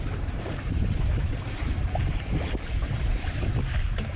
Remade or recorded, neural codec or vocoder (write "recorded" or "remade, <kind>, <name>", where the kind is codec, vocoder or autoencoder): remade, vocoder, BigVGAN v2